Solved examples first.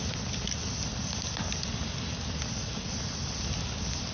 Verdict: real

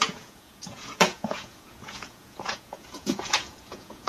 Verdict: fake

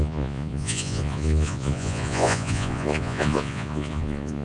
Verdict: fake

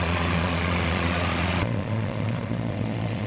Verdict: fake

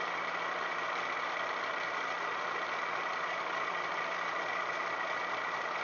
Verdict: real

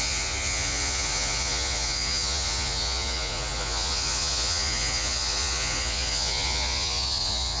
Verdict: fake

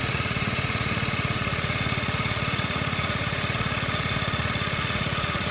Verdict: fake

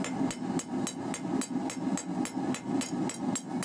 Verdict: real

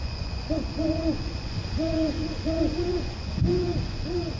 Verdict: fake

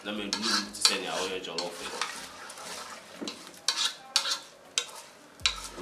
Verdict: real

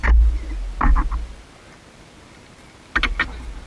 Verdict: real